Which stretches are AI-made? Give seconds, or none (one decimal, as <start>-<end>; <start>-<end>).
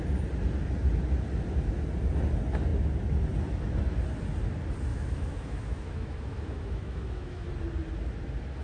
4.9-7.5